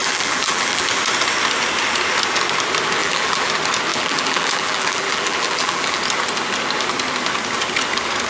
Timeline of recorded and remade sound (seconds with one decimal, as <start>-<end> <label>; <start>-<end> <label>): 0.0-1.0 remade; 1.0-3.0 recorded; 3.0-3.5 remade; 3.5-3.9 recorded; 3.9-6.0 remade; 6.0-8.3 recorded